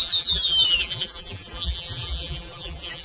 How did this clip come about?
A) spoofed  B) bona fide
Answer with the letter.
A